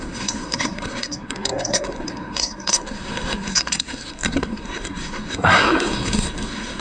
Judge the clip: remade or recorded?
remade